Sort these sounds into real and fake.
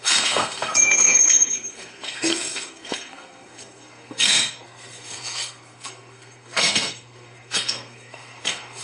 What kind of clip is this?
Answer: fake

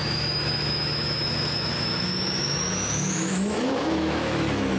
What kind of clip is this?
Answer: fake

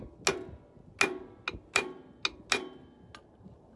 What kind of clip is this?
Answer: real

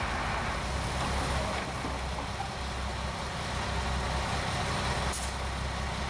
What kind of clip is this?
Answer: real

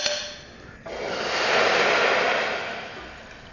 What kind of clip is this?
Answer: real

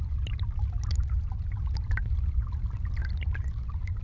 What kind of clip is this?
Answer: real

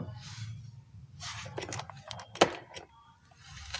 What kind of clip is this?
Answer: real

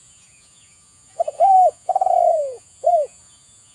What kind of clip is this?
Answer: fake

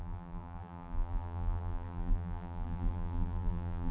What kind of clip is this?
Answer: fake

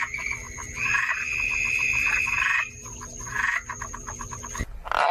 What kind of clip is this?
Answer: real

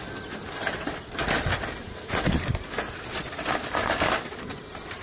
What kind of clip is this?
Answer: real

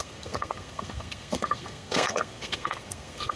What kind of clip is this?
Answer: fake